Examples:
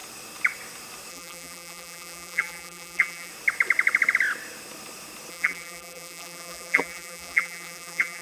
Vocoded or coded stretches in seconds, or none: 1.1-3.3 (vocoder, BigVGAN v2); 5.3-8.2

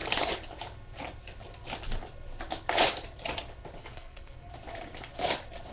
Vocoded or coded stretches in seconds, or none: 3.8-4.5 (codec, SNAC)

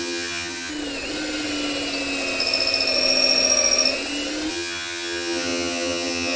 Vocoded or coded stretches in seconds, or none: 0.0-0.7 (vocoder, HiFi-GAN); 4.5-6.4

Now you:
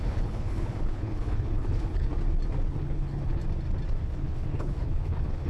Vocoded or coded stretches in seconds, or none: 0.0-2.1 (codec, HILCodec); 2.7-3.4; 3.9-5.5

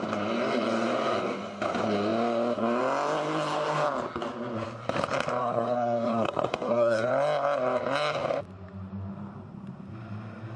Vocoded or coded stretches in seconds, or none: 5.4-7.1 (codec, SNAC)

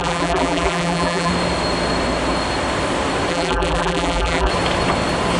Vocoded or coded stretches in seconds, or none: 0.0-1.3 (vocoder, BigVGAN v2); 3.3-4.5